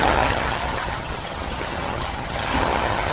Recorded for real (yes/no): no